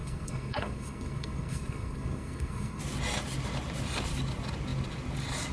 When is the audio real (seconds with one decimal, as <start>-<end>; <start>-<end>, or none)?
2.8-5.5